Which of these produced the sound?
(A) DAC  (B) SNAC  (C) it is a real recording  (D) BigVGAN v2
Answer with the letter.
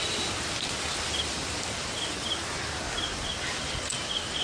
C